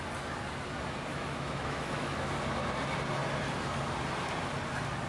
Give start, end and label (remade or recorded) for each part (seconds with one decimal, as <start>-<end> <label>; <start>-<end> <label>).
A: 0.0-1.1 recorded; 1.1-2.3 remade; 2.3-5.1 recorded